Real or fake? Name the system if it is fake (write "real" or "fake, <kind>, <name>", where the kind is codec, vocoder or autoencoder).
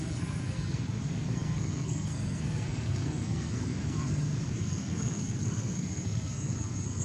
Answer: fake, codec, SNAC